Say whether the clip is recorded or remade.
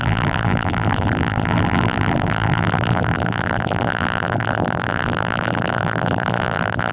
remade